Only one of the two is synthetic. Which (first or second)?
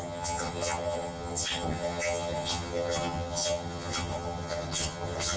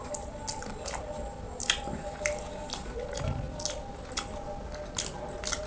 first